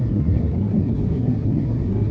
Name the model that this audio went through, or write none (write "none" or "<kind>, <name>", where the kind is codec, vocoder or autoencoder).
codec, SNAC